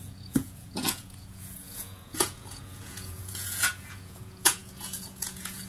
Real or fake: fake